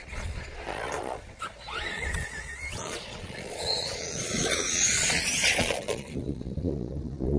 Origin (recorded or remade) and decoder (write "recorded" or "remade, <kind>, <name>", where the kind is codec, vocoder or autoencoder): remade, vocoder, Vocos